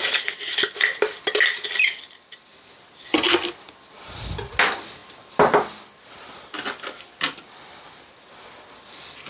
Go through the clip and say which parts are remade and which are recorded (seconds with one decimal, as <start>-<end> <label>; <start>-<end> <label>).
0.0-9.3 recorded